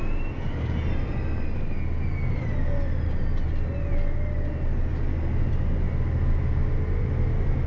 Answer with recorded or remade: recorded